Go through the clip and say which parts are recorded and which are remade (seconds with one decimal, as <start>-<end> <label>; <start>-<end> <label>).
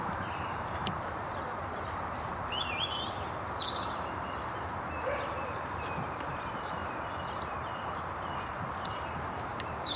0.0-10.0 remade